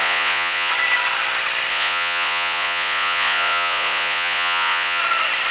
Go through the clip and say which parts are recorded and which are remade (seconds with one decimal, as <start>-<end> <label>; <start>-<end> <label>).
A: 0.0-0.7 remade; 0.7-1.7 recorded; 1.7-5.0 remade; 5.0-5.5 recorded